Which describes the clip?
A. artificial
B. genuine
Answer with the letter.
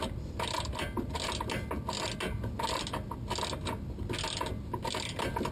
B